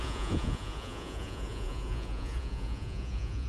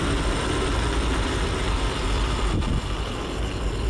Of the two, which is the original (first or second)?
second